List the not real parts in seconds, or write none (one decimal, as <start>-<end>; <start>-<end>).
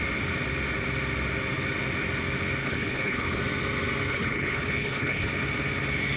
2.6-3.4; 4.1-5.3